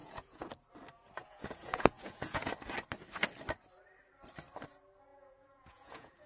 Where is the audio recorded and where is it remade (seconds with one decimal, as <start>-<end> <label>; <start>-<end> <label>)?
0.0-0.5 remade; 0.5-1.2 recorded; 1.2-2.5 remade; 2.5-5.1 recorded; 5.1-6.3 remade